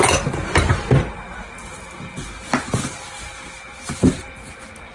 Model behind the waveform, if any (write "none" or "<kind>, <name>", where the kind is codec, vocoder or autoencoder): none